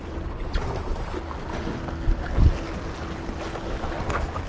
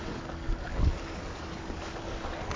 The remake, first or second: second